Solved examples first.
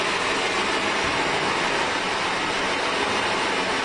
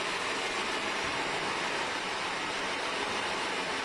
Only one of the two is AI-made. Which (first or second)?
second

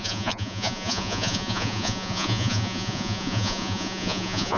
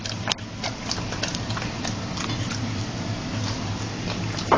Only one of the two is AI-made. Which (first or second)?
first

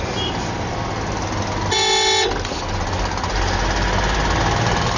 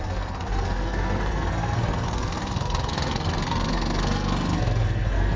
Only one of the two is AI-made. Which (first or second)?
second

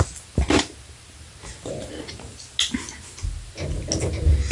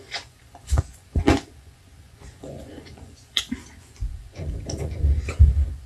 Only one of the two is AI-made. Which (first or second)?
second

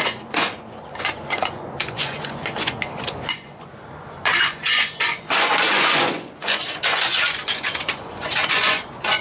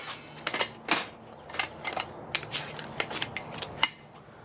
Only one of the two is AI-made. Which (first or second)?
first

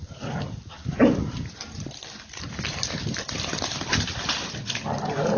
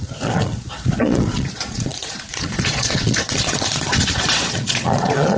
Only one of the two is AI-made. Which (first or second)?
second